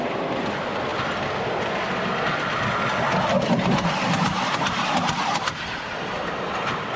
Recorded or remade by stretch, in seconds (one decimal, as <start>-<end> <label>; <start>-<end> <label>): 0.0-7.0 recorded